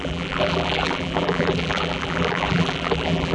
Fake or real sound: fake